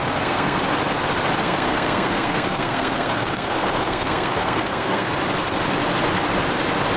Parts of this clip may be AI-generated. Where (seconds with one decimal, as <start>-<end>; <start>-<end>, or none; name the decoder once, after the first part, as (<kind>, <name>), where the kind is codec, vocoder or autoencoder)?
0.0-0.6 (codec, SNAC); 1.4-5.1